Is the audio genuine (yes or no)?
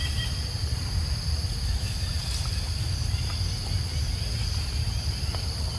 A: yes